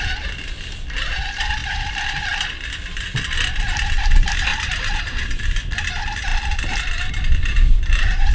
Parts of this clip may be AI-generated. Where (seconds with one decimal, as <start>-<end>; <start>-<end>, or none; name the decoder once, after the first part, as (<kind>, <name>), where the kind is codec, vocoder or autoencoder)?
4.5-5.6 (vocoder, BigVGAN v2)

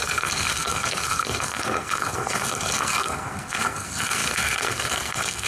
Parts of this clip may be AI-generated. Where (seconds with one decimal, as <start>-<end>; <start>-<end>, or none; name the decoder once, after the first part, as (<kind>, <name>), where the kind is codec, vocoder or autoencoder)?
0.0-5.5 (codec, SNAC)

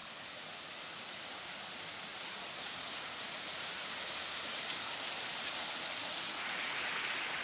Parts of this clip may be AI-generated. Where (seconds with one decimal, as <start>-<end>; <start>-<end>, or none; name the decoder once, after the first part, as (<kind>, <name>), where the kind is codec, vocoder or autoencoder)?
0.0-4.4 (vocoder, Vocos); 6.0-6.8

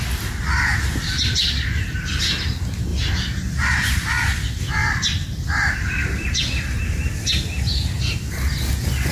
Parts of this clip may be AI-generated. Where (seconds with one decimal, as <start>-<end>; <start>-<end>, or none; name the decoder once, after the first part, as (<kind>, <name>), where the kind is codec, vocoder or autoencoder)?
0.7-1.5 (vocoder, BigVGAN v2); 2.9-3.7; 4.8-6.8

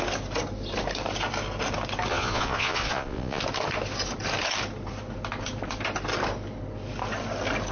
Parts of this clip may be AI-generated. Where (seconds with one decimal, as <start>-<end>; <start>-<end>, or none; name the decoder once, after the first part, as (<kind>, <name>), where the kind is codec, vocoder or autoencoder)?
2.1-3.4 (vocoder, Vocos)

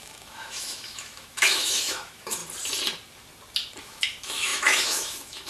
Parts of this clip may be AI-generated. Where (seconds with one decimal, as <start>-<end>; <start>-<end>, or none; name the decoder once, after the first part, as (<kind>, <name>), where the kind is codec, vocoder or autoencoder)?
0.0-2.4 (autoencoder, DAC-VAE); 3.8-5.5